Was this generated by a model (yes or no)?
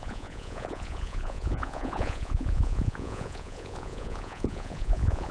yes